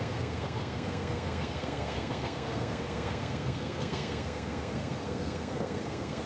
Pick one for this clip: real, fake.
fake